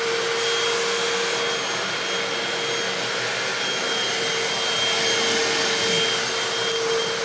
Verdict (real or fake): real